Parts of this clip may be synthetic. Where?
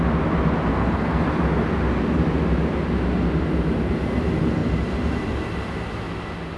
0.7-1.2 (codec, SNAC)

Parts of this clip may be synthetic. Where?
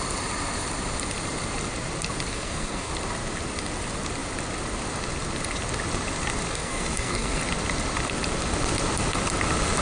2.3-2.9 (codec, SNAC); 6.5-7.4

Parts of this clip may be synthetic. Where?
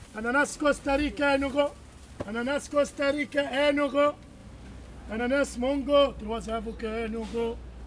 none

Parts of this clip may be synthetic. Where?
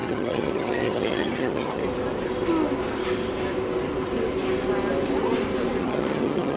0.0-1.8 (vocoder, HiFi-GAN); 5.8-6.6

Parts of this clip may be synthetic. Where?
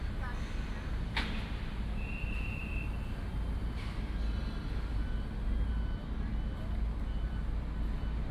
none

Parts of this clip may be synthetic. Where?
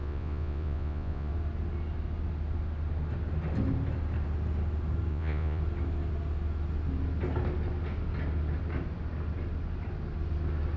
0.0-1.3 (vocoder, Vocos); 5.1-5.6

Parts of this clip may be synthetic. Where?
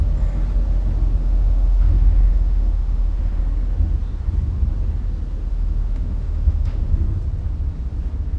1.2-3.4 (autoencoder, DAC-VAE); 5.5-6.9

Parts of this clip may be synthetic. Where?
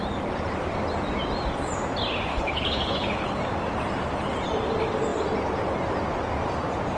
2.3-3.4 (codec, HILCodec)